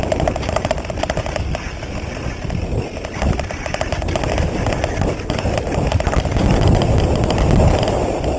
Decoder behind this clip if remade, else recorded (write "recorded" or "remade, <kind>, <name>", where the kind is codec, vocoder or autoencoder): recorded